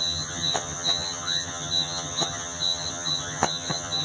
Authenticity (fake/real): fake